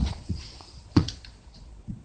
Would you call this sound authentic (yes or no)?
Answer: no